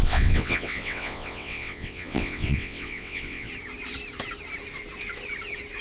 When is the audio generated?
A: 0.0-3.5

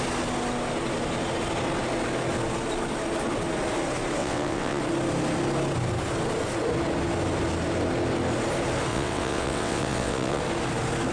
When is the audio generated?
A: 4.2-4.8; 8.9-10.4

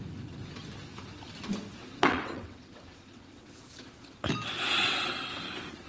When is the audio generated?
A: 1.8-3.6; 4.8-5.4

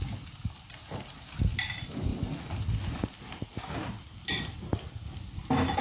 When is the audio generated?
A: none

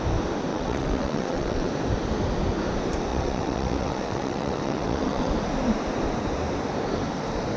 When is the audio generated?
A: 0.5-1.7; 3.1-5.3

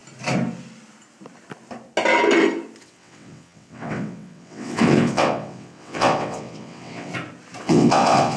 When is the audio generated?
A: 2.8-7.1; 7.6-8.4

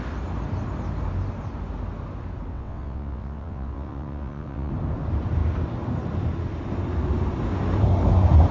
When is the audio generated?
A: 2.5-4.7

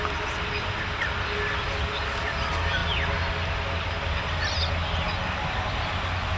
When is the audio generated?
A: none